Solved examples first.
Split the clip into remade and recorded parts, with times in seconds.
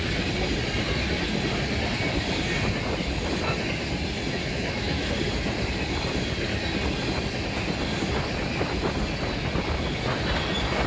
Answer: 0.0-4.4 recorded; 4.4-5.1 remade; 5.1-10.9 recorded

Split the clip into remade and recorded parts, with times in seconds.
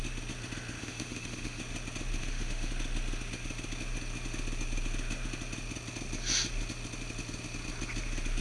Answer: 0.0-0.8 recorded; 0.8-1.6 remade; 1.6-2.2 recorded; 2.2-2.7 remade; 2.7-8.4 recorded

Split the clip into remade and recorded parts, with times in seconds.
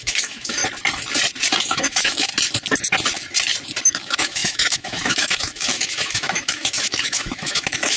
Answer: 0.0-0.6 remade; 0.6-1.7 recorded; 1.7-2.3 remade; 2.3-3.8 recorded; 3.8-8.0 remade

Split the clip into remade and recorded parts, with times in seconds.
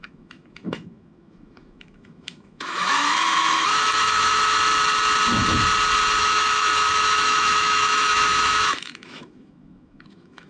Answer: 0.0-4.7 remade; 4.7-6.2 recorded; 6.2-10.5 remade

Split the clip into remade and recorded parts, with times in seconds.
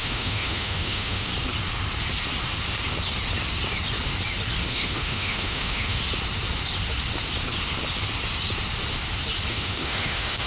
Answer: 0.0-1.3 remade; 1.3-4.7 recorded; 4.7-6.0 remade; 6.0-9.5 recorded; 9.5-10.5 remade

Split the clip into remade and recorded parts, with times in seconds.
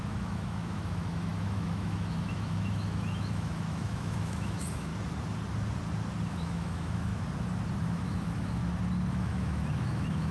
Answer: 0.0-4.9 remade; 4.9-6.3 recorded; 6.3-7.1 remade; 7.1-7.8 recorded; 7.8-8.6 remade; 8.6-9.1 recorded; 9.1-10.3 remade